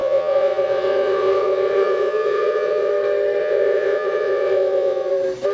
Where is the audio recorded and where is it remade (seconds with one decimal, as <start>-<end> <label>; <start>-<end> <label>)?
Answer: 0.0-2.9 remade; 2.9-3.4 recorded; 3.4-5.1 remade; 5.1-5.5 recorded